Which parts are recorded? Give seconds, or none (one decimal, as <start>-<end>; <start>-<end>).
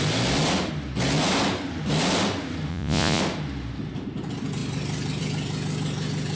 0.0-2.7; 3.2-6.4